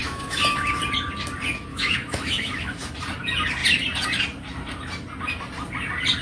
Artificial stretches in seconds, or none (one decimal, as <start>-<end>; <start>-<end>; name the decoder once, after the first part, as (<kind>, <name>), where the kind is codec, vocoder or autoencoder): 0.0-0.8 (autoencoder, DAC-VAE); 1.7-2.9